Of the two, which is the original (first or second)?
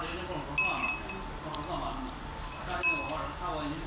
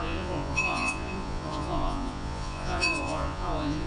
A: first